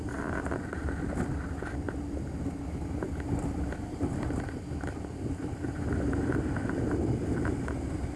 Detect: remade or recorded recorded